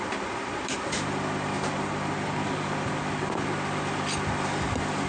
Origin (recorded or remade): recorded